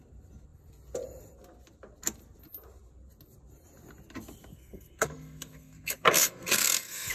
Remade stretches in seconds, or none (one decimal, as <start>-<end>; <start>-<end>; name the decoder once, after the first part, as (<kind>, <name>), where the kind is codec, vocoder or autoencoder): 4.5-7.1 (codec, SNAC)